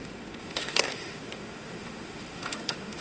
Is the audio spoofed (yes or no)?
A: yes